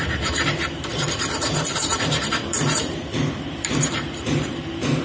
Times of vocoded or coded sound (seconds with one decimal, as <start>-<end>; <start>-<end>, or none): 0.0-5.0